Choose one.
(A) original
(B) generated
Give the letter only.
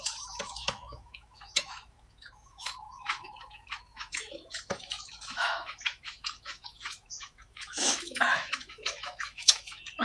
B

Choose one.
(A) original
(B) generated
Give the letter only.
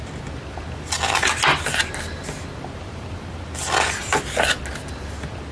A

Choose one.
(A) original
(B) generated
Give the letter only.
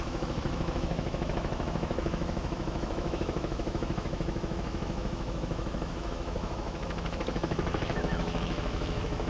B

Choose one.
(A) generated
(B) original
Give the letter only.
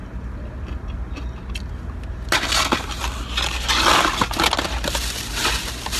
B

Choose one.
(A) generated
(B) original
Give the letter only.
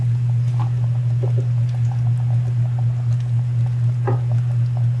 B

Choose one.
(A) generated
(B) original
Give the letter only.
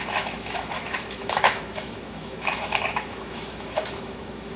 A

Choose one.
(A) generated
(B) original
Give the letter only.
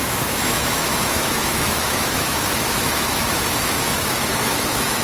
A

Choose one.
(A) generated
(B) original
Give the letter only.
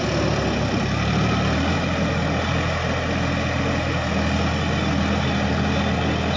B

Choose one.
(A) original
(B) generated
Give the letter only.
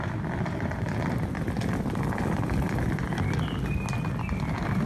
A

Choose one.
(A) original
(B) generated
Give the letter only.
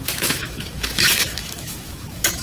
B